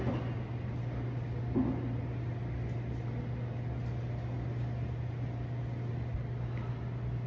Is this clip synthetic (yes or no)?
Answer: no